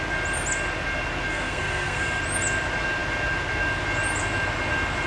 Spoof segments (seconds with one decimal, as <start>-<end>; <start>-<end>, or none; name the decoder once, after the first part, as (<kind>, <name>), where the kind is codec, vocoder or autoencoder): 1.3-2.2 (codec, SNAC)